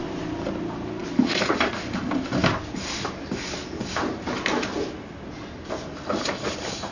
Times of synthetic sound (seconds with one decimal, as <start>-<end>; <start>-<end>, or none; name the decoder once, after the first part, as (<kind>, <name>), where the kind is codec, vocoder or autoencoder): none

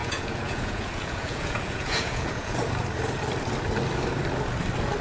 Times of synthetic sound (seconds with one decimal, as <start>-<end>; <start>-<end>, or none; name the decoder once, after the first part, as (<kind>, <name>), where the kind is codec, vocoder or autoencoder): 0.0-2.6 (vocoder, Vocos)

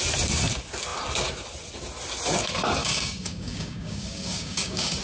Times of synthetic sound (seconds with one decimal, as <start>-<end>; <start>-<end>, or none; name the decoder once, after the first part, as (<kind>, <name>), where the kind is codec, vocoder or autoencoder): 2.8-5.0 (codec, DAC)

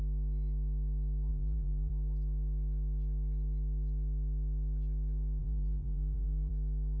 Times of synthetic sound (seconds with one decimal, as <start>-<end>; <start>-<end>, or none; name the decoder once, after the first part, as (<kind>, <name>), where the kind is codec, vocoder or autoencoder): 1.3-1.9 (vocoder, BigVGAN v2); 5.4-6.5

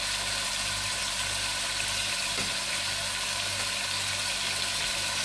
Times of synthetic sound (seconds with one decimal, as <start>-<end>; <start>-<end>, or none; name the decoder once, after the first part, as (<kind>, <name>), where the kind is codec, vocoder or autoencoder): none

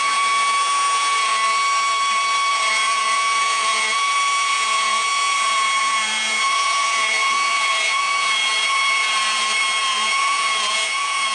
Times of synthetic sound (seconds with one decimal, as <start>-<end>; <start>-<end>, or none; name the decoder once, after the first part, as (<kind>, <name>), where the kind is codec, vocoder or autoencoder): 0.0-1.3 (vocoder, Vocos); 2.5-11.3